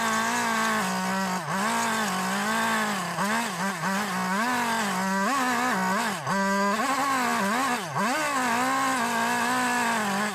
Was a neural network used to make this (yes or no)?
no